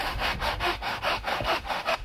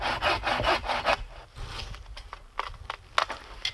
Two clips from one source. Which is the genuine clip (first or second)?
second